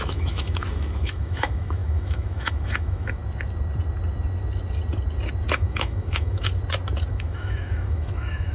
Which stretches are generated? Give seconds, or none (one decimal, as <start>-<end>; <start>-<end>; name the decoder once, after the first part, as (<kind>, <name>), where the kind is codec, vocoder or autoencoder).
0.0-3.2 (autoencoder, DAC-VAE); 5.5-6.5; 7.1-8.5